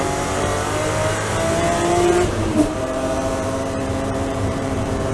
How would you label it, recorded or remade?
remade